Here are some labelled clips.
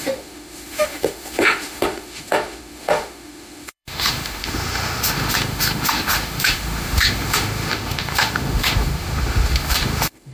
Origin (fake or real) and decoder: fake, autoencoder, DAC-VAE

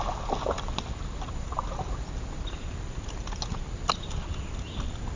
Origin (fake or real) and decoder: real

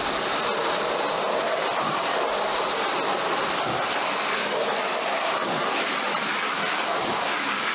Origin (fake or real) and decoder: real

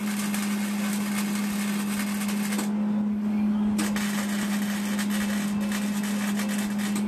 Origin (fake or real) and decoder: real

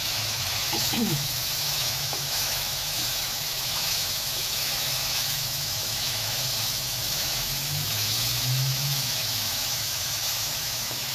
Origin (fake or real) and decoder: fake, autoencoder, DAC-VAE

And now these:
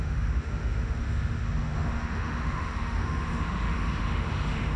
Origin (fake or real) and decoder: fake, autoencoder, DAC-VAE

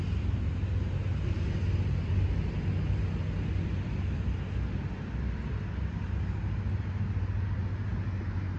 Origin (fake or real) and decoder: real